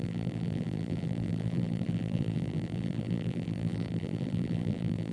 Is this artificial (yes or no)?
yes